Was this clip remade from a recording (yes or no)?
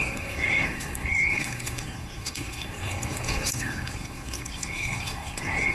yes